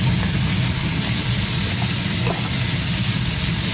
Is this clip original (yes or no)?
yes